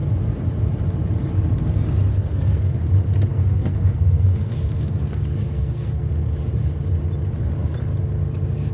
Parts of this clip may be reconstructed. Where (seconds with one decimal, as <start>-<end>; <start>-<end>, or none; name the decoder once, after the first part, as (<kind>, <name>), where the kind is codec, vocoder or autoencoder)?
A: 2.1-2.8 (codec, SNAC); 3.3-6.1